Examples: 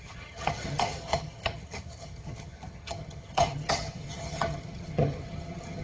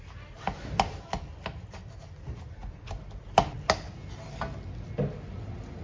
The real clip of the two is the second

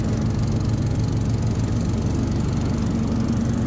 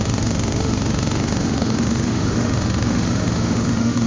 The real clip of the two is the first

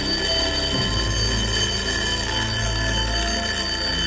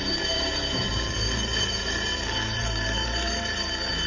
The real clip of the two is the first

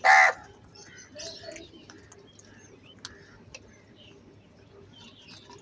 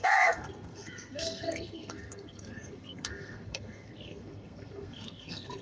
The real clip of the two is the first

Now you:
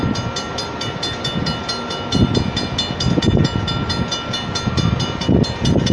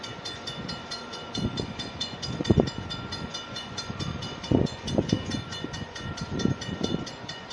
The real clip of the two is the first